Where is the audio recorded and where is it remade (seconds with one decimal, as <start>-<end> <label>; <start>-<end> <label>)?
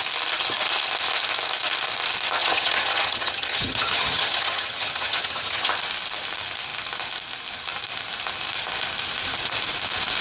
0.0-2.4 recorded; 2.4-5.7 remade; 5.7-10.2 recorded